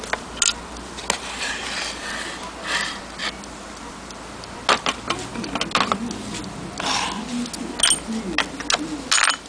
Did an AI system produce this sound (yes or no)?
no